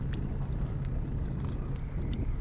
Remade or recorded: recorded